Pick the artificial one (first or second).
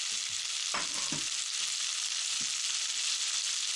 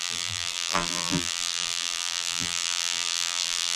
second